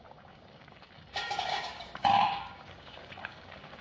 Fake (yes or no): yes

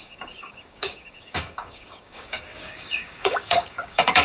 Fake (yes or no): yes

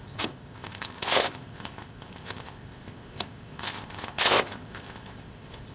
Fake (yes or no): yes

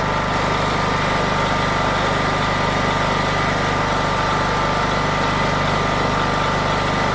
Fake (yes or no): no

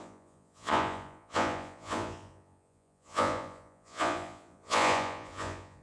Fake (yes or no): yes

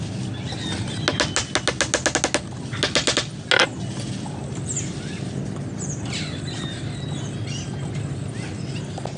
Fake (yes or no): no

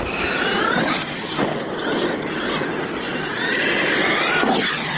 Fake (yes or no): no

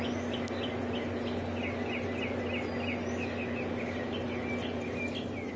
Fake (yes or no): no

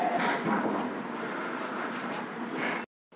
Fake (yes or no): no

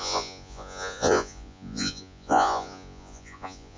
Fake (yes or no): yes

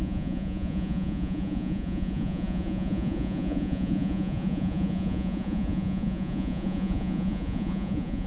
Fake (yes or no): yes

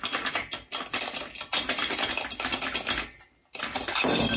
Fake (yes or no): no